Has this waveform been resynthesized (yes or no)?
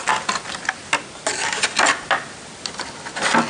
no